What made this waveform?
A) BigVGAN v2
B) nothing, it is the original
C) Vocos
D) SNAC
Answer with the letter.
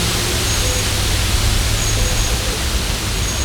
B